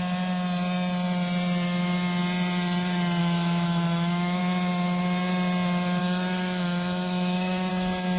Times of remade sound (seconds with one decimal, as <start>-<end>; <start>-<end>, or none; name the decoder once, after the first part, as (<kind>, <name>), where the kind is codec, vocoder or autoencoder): 3.2-4.4 (autoencoder, DAC-VAE); 6.0-7.7